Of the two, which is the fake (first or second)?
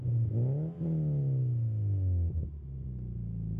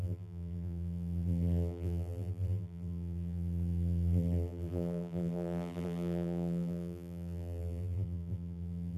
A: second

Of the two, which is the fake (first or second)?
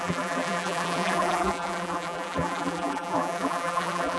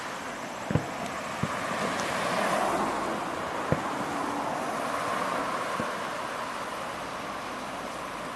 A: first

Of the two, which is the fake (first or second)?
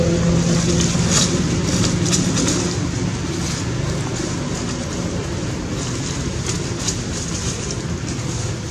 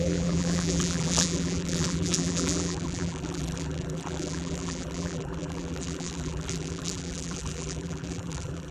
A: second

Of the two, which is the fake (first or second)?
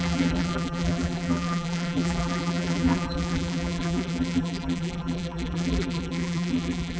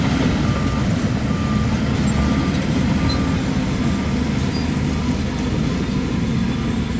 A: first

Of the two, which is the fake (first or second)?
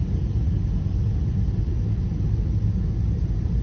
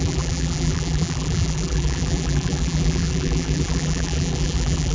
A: second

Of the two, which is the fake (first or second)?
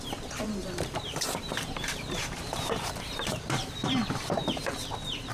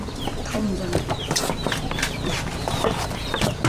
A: first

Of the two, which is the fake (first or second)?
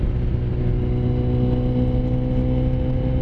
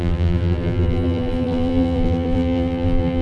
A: second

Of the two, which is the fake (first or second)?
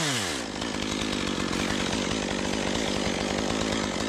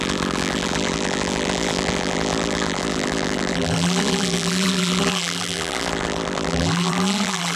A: second